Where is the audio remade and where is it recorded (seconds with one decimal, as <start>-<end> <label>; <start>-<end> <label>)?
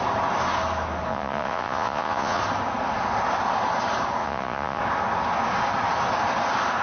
0.0-1.1 recorded; 1.1-2.4 remade; 2.4-4.2 recorded; 4.2-4.8 remade; 4.8-6.8 recorded